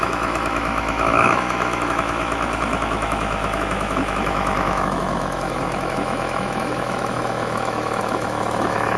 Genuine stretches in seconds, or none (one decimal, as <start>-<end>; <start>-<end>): none